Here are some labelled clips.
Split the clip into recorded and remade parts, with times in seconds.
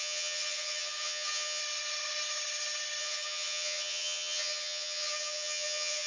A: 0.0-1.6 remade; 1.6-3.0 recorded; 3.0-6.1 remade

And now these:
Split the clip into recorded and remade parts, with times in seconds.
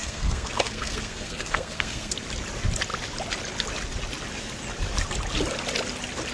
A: 0.0-2.1 remade; 2.1-6.3 recorded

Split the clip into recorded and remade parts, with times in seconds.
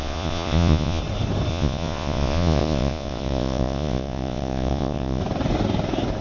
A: 0.0-1.0 remade; 1.0-1.5 recorded; 1.5-5.2 remade; 5.2-6.2 recorded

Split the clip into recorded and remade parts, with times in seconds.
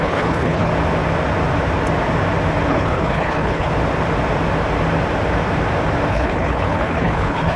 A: 0.0-0.7 remade; 0.7-2.7 recorded; 2.7-3.7 remade; 3.7-6.1 recorded; 6.1-7.6 remade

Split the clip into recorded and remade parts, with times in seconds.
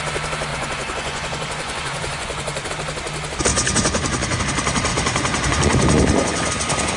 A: 0.0-0.5 recorded; 0.5-2.7 remade; 2.7-3.5 recorded; 3.5-4.4 remade; 4.4-4.9 recorded; 4.9-6.5 remade; 6.5-7.0 recorded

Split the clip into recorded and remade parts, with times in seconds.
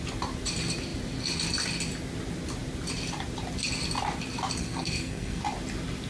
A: 0.0-4.6 recorded; 4.6-5.4 remade; 5.4-6.1 recorded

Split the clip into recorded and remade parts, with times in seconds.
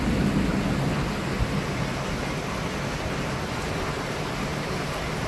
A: 0.0-5.3 recorded